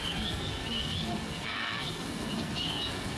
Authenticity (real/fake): fake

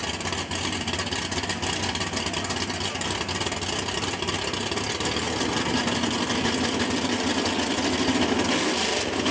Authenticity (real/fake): real